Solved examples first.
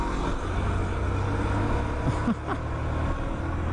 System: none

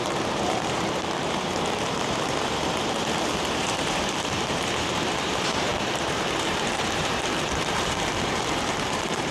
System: vocoder, BigVGAN v2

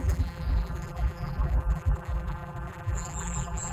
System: vocoder, BigVGAN v2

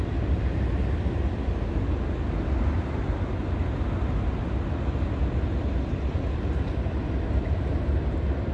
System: none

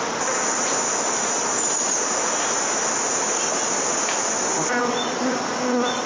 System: none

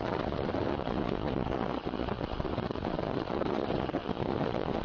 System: vocoder, Vocos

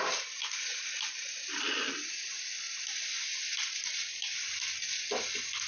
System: none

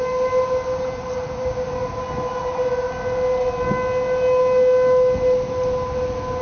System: none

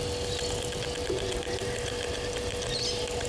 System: none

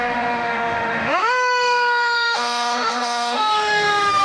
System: autoencoder, DAC-VAE